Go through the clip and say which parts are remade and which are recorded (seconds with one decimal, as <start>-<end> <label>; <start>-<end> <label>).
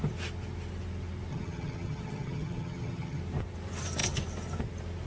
0.0-1.3 recorded; 1.3-3.2 remade; 3.2-5.1 recorded